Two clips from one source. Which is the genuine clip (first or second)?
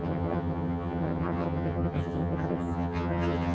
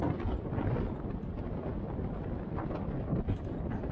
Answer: second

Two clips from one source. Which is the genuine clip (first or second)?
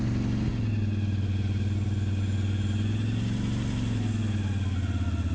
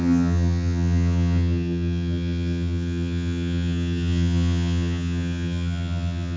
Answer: first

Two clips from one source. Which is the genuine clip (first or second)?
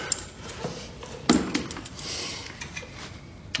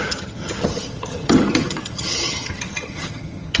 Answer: first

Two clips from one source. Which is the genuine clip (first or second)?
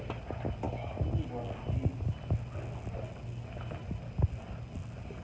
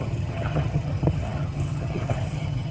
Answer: first